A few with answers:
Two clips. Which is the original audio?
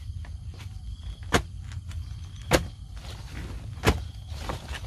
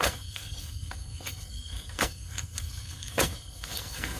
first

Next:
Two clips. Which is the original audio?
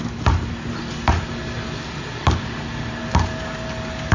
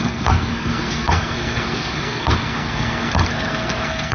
first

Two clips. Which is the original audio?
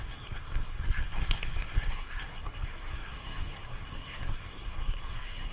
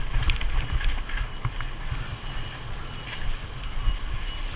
second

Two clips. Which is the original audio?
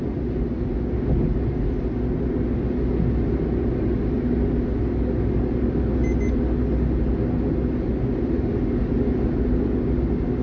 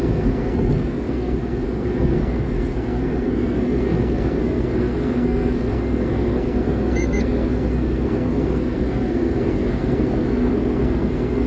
first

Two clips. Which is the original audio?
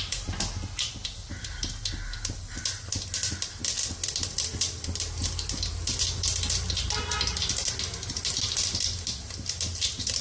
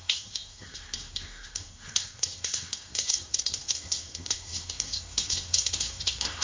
first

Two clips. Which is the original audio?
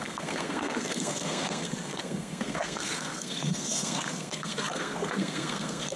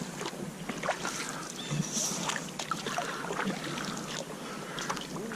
second